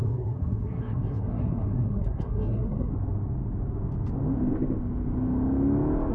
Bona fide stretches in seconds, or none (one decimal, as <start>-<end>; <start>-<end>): 2.9-6.1